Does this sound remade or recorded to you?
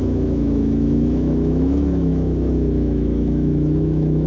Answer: remade